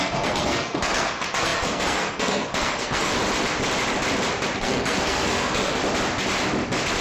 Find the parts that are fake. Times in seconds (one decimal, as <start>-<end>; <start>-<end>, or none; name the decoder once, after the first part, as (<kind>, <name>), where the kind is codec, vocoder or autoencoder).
0.0-3.1 (codec, SNAC); 4.6-5.8